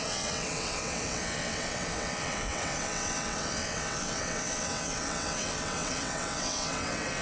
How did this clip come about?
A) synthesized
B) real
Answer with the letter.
A